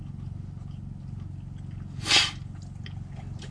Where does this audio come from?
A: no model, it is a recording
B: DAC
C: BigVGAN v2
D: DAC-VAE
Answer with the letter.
A